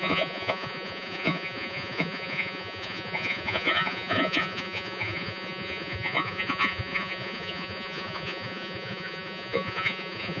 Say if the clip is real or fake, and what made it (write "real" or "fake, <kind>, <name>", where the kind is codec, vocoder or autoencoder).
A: fake, vocoder, Vocos